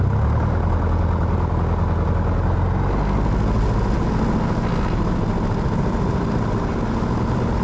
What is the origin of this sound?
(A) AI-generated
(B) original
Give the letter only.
B